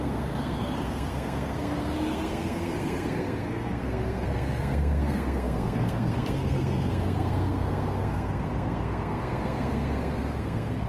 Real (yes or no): no